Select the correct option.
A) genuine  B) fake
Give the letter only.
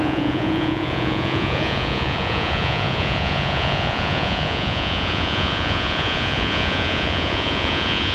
B